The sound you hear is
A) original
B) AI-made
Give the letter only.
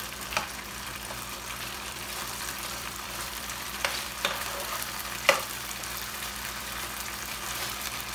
B